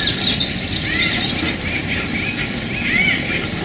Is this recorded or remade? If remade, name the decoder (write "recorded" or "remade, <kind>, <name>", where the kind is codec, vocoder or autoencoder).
recorded